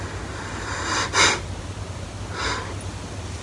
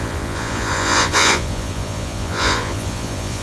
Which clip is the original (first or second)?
first